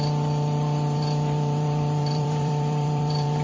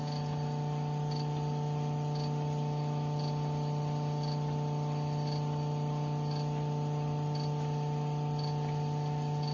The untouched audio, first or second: second